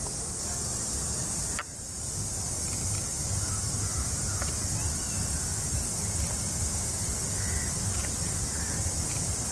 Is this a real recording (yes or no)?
yes